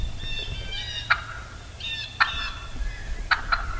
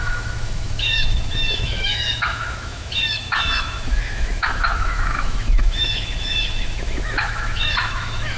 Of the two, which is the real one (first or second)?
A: first